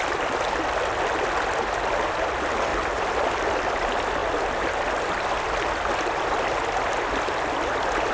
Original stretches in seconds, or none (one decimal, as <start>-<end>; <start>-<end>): 0.0-2.7; 3.3-8.1